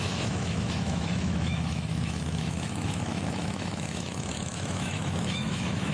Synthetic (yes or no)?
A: yes